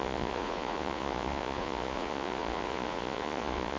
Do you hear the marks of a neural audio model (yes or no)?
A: yes